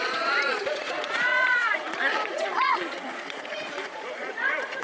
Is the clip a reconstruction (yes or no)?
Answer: yes